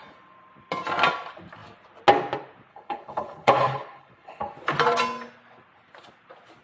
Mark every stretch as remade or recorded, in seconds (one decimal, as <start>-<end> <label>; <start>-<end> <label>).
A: 0.0-2.7 recorded; 2.7-4.4 remade; 4.4-6.6 recorded